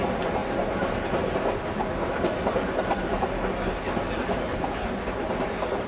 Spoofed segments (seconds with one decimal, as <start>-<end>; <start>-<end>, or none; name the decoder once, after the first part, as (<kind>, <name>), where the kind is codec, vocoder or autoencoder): none